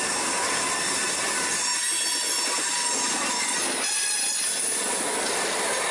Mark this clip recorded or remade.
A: recorded